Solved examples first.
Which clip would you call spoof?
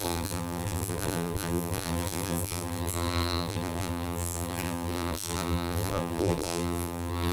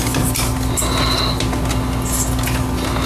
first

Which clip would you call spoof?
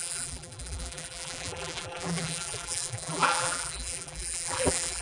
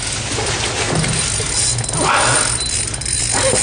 first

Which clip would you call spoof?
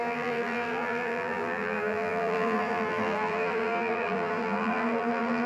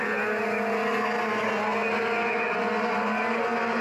first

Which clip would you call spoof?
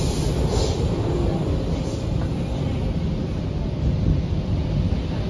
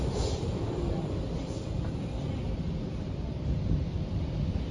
second